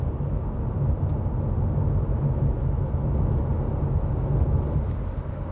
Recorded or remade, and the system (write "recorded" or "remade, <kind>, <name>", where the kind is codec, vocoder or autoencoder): recorded